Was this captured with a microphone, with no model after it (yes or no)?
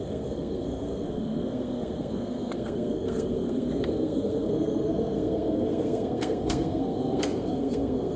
no